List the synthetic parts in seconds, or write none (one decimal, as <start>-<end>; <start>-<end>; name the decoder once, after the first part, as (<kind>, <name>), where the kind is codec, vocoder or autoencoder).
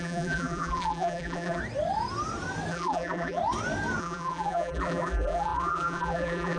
0.0-1.6 (vocoder, BigVGAN v2); 2.7-3.4; 4.0-6.6